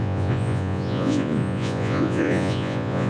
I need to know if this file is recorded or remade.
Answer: remade